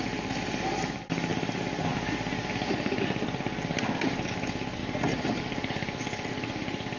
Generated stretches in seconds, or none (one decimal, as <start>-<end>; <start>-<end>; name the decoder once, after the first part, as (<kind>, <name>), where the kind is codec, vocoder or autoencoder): 4.8-5.4 (vocoder, BigVGAN v2)